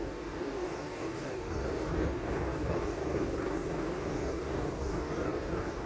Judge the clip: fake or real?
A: fake